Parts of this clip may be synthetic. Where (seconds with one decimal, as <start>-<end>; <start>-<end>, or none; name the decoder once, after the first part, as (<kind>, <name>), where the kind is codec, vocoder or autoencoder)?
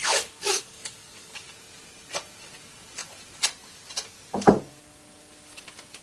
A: 0.0-1.5 (codec, DAC)